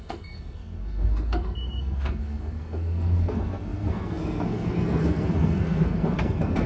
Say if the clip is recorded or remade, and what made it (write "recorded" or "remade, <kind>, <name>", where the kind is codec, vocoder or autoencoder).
remade, codec, SNAC